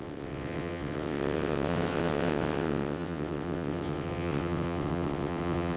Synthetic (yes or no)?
yes